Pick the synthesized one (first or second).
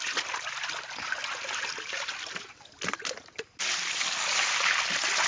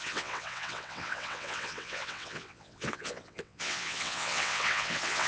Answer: second